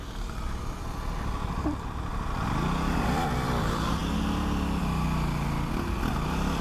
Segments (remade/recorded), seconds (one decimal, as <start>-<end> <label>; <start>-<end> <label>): 0.0-6.6 recorded